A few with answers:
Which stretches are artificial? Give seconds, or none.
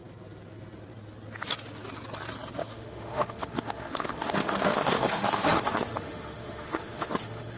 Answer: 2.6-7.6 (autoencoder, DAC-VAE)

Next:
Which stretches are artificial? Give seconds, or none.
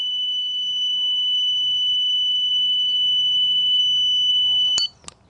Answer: 0.0-3.8 (codec, SNAC); 4.3-4.7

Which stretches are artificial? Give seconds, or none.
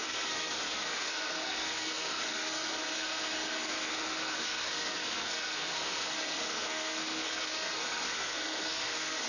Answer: 0.0-9.3 (codec, SNAC)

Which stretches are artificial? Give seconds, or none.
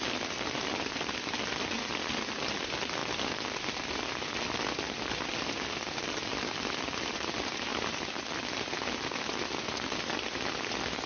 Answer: none